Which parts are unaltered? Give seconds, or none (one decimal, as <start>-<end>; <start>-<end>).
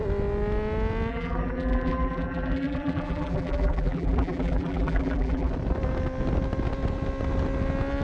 0.0-1.1; 5.5-8.0